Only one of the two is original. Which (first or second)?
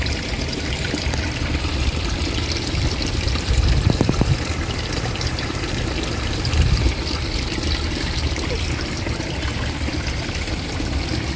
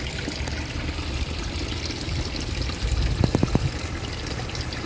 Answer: second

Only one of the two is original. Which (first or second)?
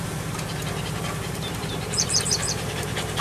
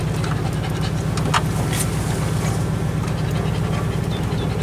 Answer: second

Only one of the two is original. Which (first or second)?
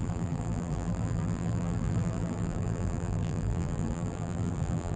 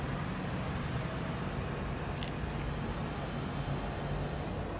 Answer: second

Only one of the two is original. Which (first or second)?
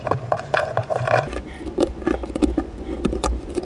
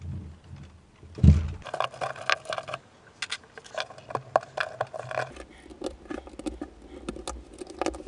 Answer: second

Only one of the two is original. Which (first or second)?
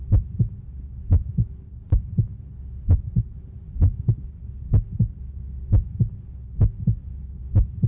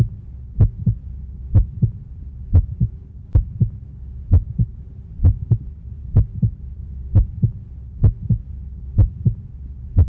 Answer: first